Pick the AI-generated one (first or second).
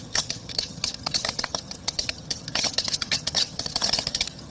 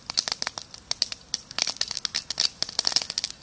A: first